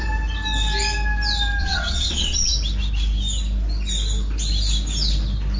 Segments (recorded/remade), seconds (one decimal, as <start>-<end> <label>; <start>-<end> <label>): 0.0-1.6 recorded; 1.6-2.5 remade; 2.5-5.6 recorded